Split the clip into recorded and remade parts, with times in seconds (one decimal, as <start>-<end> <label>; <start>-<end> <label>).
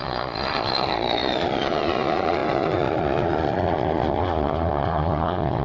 0.0-5.6 remade